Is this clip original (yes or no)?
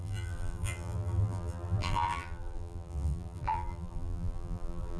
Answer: no